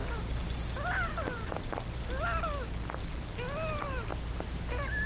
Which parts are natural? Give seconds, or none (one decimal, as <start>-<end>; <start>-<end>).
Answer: 0.0-5.1

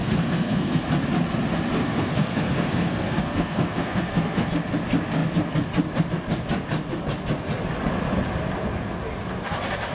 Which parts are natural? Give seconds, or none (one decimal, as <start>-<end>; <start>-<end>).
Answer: 0.8-1.8; 4.5-9.9

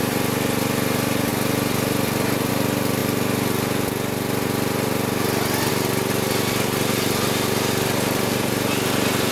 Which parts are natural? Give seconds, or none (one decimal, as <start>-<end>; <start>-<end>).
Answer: 0.0-9.3

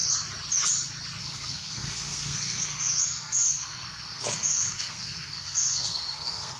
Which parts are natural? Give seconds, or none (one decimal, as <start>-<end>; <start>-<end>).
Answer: 0.0-1.2